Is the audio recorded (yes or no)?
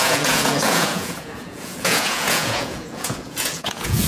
no